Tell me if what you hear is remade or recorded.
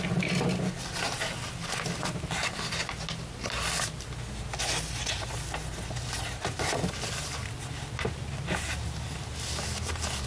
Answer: recorded